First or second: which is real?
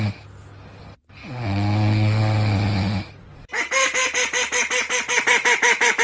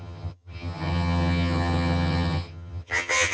first